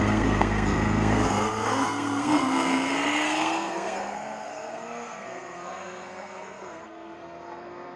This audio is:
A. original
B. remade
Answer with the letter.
B